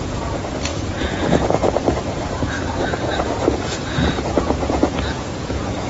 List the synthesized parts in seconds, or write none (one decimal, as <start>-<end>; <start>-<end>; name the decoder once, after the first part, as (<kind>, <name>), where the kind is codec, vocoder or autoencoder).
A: 0.0-5.9 (vocoder, Vocos)